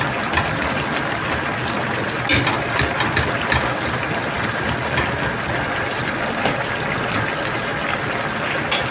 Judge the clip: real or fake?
real